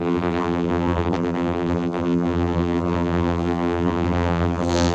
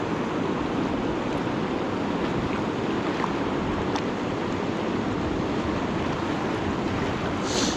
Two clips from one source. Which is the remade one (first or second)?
first